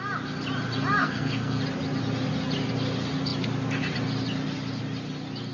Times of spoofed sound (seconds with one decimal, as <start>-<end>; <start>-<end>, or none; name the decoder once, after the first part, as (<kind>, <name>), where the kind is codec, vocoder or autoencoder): 1.0-1.6 (codec, SNAC)